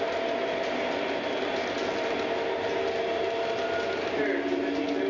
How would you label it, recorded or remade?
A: recorded